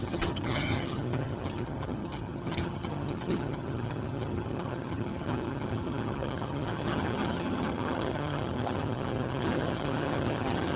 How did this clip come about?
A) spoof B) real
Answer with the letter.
A